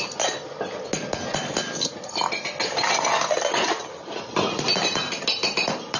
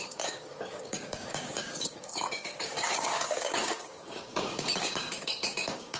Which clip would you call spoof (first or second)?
second